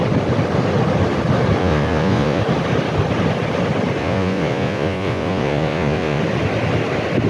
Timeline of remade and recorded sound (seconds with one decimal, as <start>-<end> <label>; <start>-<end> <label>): 0.0-1.6 recorded; 1.6-2.4 remade; 2.4-4.0 recorded; 4.0-6.2 remade; 6.2-7.3 recorded